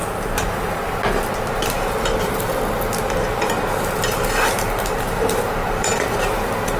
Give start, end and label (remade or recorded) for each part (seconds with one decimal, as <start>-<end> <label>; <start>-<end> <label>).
0.0-2.3 remade; 2.3-5.6 recorded; 5.6-6.2 remade; 6.2-6.8 recorded